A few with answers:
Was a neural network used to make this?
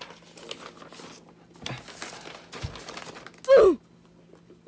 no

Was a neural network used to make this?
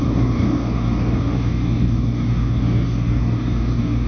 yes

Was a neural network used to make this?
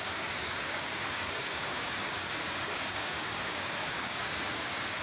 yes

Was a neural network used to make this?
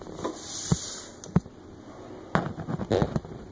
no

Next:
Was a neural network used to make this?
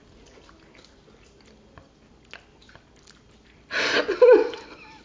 no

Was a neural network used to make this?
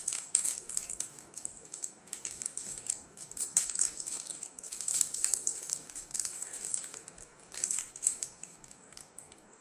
yes